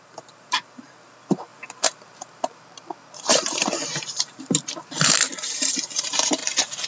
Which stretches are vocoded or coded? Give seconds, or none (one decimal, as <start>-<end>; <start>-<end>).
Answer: 0.0-6.4